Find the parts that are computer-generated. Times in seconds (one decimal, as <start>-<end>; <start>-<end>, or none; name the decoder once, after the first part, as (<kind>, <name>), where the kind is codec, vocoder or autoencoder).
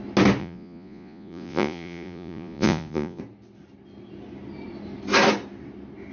0.4-3.2 (vocoder, Vocos)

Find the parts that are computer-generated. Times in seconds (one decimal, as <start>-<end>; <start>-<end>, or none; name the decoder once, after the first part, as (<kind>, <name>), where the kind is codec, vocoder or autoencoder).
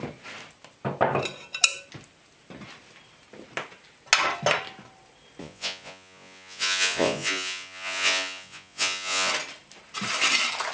5.4-9.3 (vocoder, Vocos)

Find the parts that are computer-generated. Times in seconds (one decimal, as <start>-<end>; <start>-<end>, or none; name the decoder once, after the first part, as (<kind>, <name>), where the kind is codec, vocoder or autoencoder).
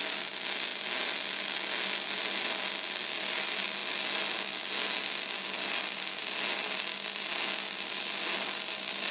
none